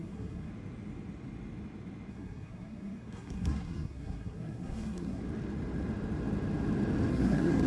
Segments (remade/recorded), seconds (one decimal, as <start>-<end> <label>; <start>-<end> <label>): 0.0-0.5 remade; 0.5-2.1 recorded; 2.1-5.2 remade; 5.2-7.1 recorded; 7.1-7.7 remade